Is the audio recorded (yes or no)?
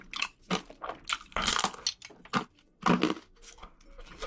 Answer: yes